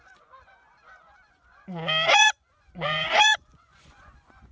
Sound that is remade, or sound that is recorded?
remade